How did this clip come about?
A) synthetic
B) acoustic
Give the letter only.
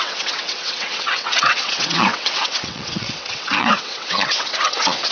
A